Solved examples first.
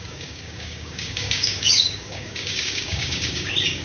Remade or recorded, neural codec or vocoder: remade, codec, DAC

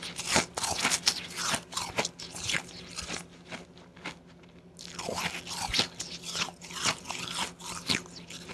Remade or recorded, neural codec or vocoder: recorded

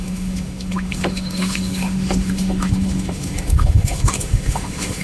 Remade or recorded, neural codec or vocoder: remade, autoencoder, DAC-VAE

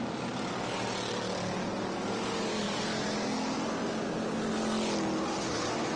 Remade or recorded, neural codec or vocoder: recorded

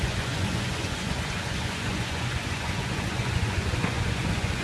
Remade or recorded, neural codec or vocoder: remade, vocoder, Vocos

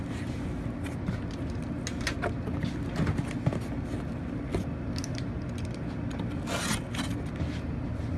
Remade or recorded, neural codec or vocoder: recorded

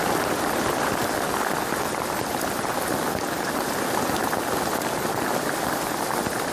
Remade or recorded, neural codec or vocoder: remade, vocoder, BigVGAN v2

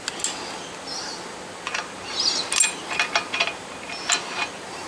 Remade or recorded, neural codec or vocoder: recorded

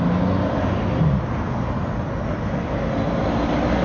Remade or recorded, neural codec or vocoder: recorded